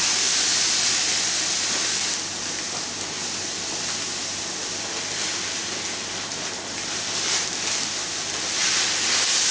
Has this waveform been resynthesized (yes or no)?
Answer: no